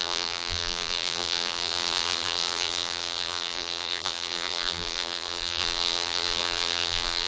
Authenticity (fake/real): fake